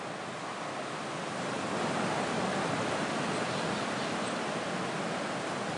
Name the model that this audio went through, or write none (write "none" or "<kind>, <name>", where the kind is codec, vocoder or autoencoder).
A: none